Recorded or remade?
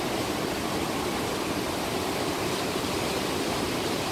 recorded